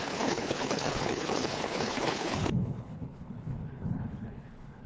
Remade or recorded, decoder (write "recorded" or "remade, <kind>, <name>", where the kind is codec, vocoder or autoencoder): remade, codec, HILCodec